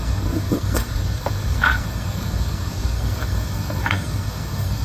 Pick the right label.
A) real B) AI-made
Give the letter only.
B